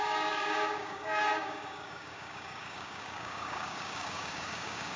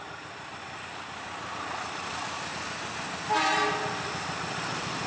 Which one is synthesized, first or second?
first